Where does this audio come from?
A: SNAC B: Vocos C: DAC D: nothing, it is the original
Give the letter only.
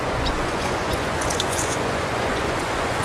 B